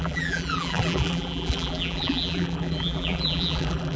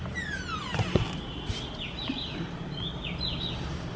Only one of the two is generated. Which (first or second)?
first